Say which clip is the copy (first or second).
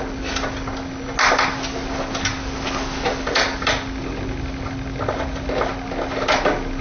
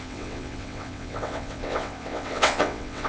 second